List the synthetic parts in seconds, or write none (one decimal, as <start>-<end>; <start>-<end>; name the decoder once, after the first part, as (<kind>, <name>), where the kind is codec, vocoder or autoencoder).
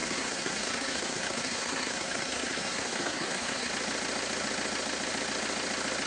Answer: 0.0-3.7 (codec, SNAC)